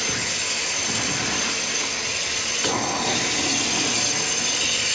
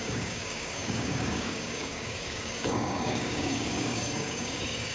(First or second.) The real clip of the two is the first